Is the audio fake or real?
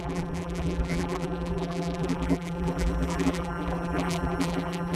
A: fake